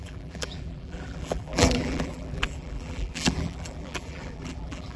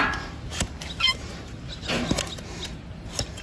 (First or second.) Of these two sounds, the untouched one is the second